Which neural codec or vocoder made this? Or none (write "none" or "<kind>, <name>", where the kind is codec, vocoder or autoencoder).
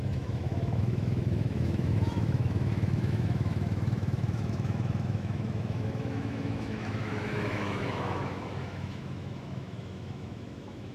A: autoencoder, DAC-VAE